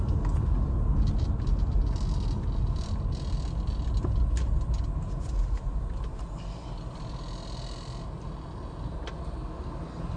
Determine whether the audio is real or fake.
real